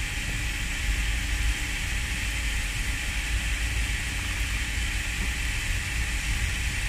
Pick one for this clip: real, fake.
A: fake